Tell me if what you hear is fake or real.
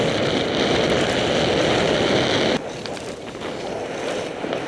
real